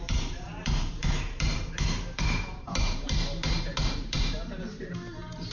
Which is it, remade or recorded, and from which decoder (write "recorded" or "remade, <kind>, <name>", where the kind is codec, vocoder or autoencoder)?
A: remade, vocoder, BigVGAN v2